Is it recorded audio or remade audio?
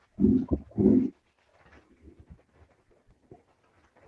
recorded